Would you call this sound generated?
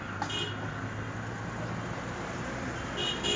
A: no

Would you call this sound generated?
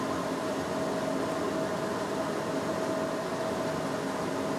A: no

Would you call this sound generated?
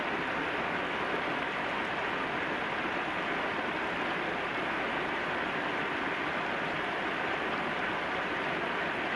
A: no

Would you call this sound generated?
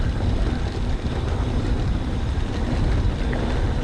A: no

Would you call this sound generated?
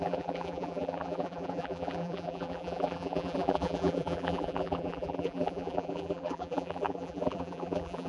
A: yes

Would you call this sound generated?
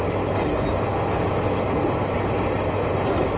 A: no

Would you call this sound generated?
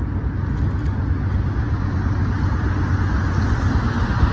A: no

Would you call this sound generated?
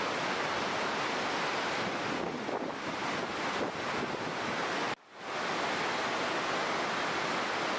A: no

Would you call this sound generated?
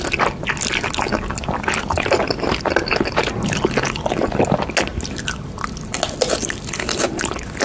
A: no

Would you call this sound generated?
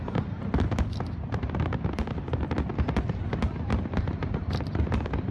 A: yes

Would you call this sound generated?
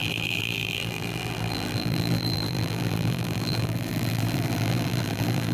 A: yes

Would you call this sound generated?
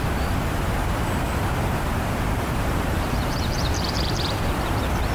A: yes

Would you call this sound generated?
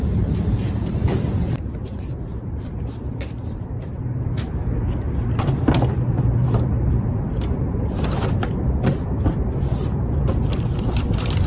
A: yes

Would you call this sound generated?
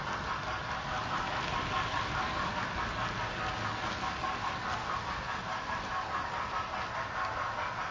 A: no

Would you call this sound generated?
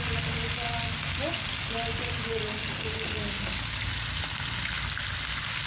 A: no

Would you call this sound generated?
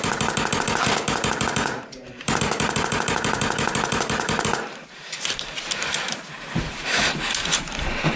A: yes